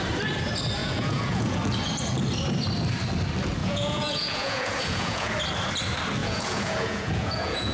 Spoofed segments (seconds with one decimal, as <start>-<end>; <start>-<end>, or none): 0.8-1.6; 3.6-5.3; 6.2-7.7